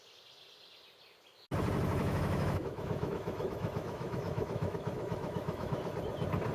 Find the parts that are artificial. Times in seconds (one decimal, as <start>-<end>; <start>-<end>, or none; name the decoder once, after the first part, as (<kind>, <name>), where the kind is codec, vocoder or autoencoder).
2.0-5.9 (autoencoder, DAC-VAE)